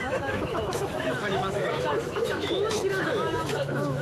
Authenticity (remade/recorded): remade